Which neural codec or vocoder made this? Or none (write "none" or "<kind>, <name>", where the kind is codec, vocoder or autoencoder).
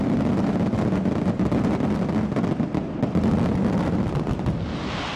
none